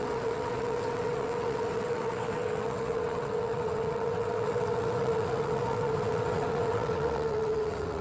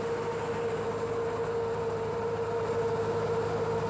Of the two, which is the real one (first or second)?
second